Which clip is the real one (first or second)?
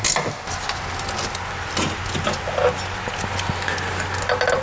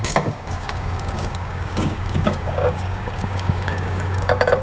first